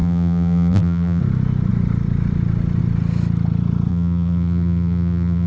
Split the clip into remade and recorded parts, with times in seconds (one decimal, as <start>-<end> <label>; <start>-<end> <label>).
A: 0.0-1.2 remade; 1.2-3.9 recorded; 3.9-5.5 remade

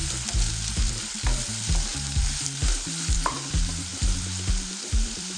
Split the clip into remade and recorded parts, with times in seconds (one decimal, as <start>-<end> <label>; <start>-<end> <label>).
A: 0.0-0.7 recorded; 0.7-5.4 remade

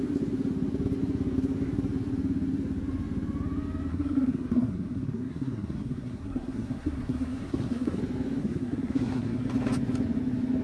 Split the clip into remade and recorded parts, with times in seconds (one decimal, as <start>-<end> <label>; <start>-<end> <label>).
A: 0.0-3.9 recorded; 3.9-8.0 remade; 8.0-8.4 recorded; 8.4-9.5 remade; 9.5-10.6 recorded

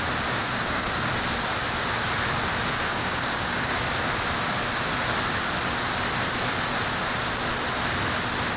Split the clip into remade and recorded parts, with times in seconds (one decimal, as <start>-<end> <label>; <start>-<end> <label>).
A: 0.0-0.4 recorded; 0.4-1.1 remade; 1.1-2.9 recorded; 2.9-3.7 remade; 3.7-8.6 recorded

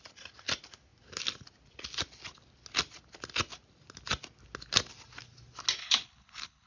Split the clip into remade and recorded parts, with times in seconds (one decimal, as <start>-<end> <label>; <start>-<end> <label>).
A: 0.0-5.8 recorded; 5.8-6.7 remade

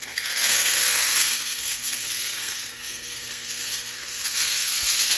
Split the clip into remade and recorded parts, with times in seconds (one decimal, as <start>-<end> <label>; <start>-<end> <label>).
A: 0.0-5.2 remade

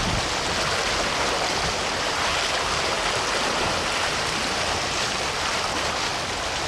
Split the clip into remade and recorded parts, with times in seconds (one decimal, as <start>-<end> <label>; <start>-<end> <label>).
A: 0.0-6.7 recorded